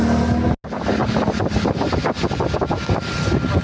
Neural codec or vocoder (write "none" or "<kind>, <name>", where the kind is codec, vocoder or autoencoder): none